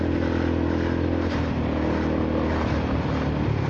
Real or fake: real